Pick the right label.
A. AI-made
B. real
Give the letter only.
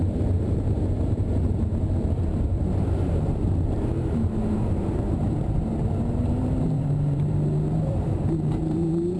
A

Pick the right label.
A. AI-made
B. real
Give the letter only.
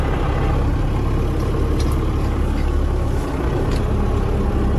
B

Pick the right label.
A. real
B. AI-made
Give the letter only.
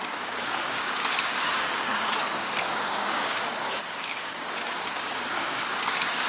B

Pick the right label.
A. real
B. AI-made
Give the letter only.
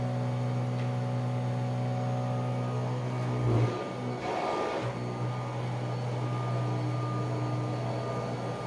A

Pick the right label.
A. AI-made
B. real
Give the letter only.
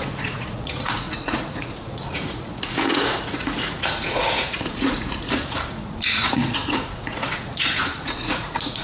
A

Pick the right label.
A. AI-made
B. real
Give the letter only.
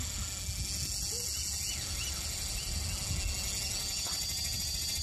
B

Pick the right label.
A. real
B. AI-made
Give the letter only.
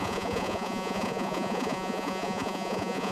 B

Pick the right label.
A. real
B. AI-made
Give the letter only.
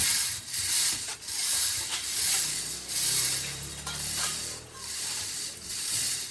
B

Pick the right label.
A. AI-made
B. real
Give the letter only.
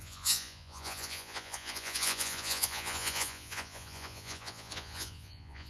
A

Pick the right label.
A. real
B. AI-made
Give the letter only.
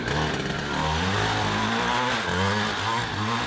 A